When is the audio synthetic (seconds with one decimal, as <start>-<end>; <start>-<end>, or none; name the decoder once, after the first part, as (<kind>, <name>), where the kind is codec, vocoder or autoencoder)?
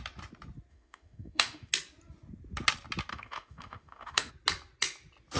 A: 0.7-1.7 (autoencoder, DAC-VAE); 3.1-4.3